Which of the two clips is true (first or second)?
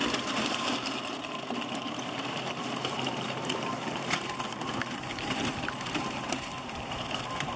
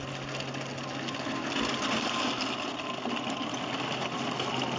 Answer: second